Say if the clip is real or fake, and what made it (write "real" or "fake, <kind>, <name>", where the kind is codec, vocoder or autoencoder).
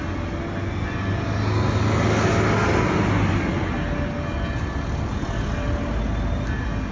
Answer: real